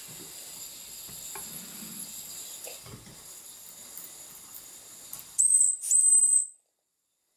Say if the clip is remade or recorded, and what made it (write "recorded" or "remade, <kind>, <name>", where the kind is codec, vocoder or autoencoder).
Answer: recorded